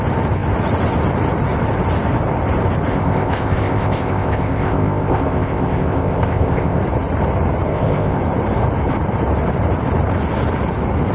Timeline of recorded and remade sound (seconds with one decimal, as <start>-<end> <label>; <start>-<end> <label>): 0.0-2.9 recorded; 2.9-6.8 remade; 6.8-7.7 recorded; 7.7-8.2 remade; 8.2-11.1 recorded